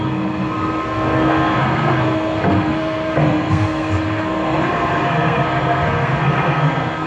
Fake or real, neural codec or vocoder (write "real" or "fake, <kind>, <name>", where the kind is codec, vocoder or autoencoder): fake, codec, SNAC